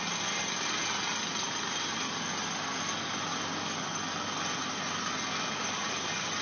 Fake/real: real